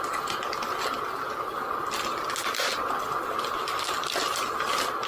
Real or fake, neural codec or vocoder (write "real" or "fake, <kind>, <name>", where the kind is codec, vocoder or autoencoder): real